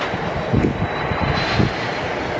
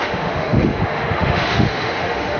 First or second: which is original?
first